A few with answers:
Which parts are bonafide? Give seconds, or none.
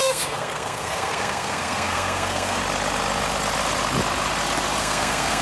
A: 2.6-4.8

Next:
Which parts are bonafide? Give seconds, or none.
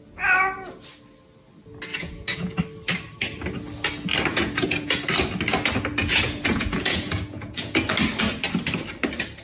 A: 0.0-1.9; 2.6-4.3; 5.0-6.0; 7.9-9.4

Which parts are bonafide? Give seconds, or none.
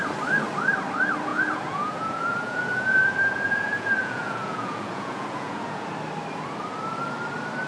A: 0.0-1.3; 5.9-7.7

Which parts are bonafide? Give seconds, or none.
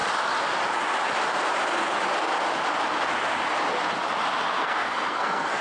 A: 0.0-4.5